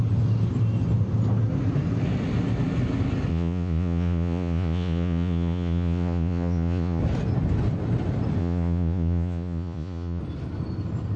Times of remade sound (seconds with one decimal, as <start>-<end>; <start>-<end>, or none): 3.3-7.0; 8.4-10.2